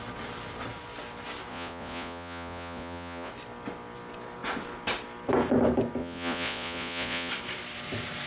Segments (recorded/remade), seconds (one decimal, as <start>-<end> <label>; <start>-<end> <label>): 0.0-1.5 recorded; 1.5-3.3 remade; 3.3-6.0 recorded; 6.0-7.3 remade; 7.3-8.3 recorded